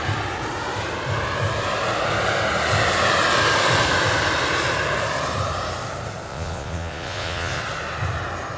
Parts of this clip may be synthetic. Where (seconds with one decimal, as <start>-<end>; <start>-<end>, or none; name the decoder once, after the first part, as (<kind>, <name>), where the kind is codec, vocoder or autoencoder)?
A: 6.3-7.6 (vocoder, Vocos)